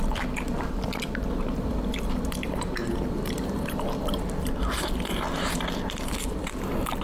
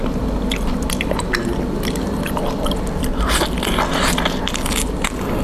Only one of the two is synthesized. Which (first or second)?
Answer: first